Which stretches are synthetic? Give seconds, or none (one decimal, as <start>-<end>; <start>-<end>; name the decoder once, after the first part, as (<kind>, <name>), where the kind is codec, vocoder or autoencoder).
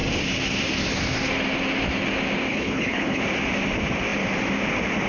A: 2.5-3.2 (codec, HILCodec)